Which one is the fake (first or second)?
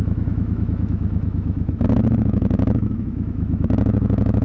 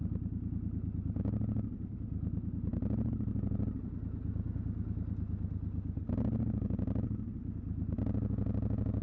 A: first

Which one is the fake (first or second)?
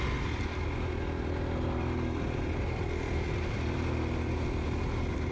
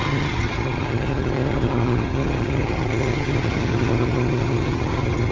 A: second